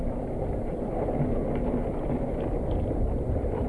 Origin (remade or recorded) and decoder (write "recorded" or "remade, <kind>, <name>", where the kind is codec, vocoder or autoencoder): recorded